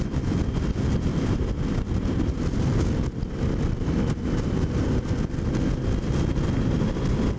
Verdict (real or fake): real